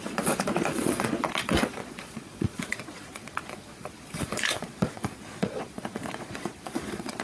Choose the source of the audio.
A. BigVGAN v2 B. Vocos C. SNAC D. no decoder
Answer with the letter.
B